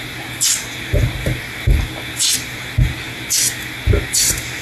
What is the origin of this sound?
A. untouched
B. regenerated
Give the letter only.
A